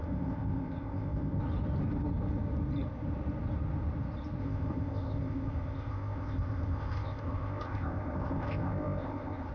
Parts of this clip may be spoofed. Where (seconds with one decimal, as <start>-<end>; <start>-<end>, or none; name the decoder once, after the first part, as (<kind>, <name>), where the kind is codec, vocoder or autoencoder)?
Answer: 0.0-1.4 (codec, ZipCodec); 4.4-9.5